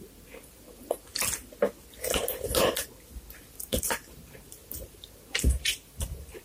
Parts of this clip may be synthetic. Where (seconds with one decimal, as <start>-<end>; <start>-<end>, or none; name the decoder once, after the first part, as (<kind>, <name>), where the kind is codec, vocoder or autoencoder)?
0.0-1.1 (vocoder, BigVGAN v2); 3.3-6.4

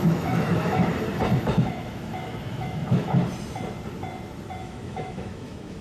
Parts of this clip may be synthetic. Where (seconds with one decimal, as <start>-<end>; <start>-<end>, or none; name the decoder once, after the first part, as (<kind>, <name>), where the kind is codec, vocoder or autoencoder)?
0.0-0.9 (autoencoder, DAC-VAE); 1.6-3.2; 4.6-5.8

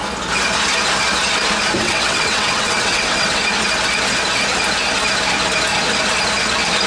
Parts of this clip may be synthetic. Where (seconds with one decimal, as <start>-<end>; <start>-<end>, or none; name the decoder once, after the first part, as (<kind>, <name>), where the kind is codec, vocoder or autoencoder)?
1.8-3.4 (vocoder, WaveNeXt)

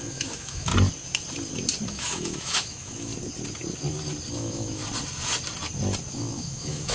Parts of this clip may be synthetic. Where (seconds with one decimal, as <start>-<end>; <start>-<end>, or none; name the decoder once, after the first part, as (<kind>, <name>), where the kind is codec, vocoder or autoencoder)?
0.0-0.7 (autoencoder, DAC-VAE); 1.9-3.1; 4.3-4.8; 6.1-6.9

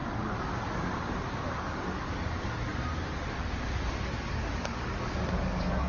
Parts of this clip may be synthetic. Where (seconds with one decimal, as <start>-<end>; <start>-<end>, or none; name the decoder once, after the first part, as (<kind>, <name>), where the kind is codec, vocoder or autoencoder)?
0.0-0.9 (codec, DAC); 1.6-2.7; 4.4-5.9

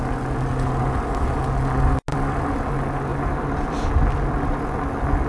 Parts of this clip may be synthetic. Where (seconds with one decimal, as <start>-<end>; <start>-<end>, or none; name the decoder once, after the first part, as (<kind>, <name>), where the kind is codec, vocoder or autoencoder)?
2.1-2.7 (vocoder, BigVGAN v2); 3.1-4.6

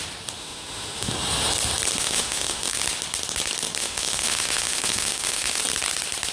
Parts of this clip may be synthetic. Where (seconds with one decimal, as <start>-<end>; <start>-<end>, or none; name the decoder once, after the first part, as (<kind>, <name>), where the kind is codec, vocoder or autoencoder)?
0.4-1.1 (autoencoder, DAC-VAE); 2.0-2.8; 3.8-5.6

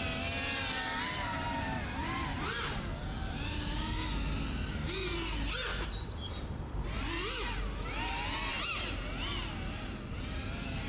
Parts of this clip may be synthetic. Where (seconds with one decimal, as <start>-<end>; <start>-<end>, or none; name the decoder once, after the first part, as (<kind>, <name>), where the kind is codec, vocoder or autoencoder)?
5.7-7.1 (vocoder, BigVGAN v2)